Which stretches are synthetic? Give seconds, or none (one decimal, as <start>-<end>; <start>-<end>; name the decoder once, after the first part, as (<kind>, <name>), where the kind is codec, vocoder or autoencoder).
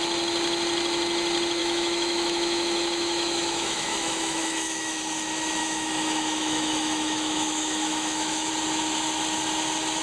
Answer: 1.6-5.0 (autoencoder, DAC-VAE); 5.6-8.5